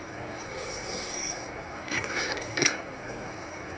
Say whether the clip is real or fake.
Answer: fake